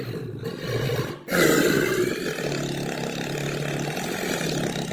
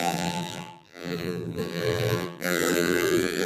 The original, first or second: first